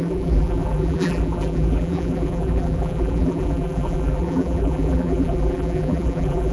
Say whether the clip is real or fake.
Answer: fake